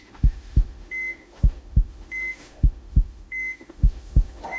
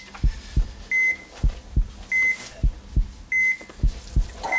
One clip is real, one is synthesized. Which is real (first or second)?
second